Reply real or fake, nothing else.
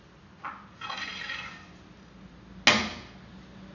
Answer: real